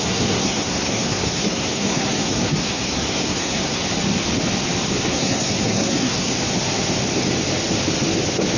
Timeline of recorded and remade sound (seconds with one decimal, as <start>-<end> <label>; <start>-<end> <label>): 0.0-3.8 remade; 3.8-5.1 recorded; 5.1-6.3 remade; 6.3-8.6 recorded